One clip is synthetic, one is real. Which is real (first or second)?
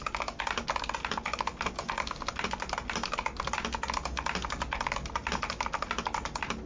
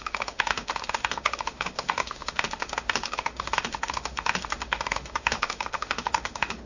first